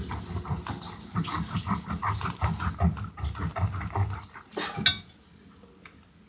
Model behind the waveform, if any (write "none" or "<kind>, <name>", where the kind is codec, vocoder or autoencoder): none